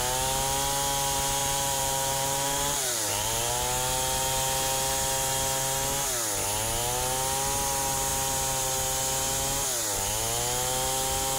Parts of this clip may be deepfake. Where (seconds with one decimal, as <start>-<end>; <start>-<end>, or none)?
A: 1.4-3.5